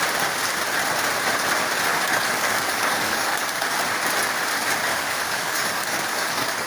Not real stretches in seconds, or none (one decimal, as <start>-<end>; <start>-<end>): 1.9-3.8; 4.9-6.7